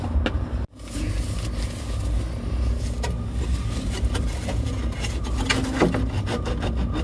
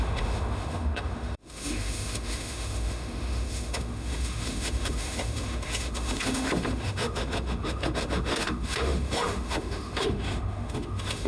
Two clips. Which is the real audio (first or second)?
first